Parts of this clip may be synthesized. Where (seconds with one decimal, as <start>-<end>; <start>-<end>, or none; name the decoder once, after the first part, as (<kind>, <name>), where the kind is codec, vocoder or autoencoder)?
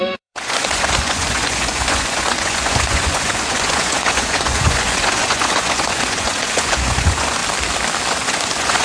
0.0-7.4 (vocoder, Vocos); 8.1-8.8